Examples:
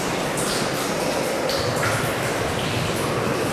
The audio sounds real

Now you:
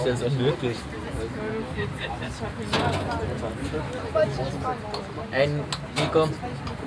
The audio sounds real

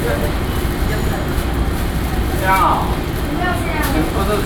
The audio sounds real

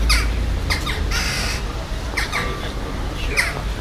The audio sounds real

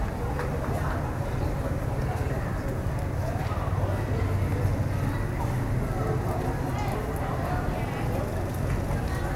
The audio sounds real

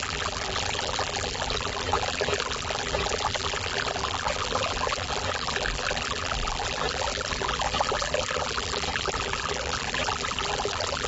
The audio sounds fake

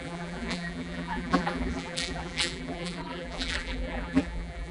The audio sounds fake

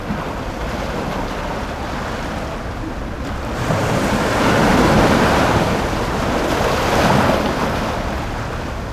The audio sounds real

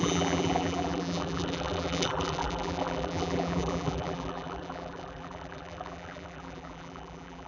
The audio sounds fake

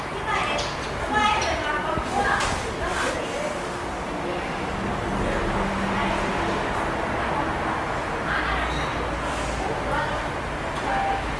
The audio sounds real